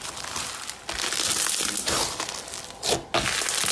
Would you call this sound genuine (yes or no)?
yes